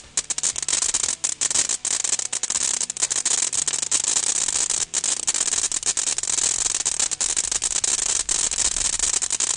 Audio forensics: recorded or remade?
recorded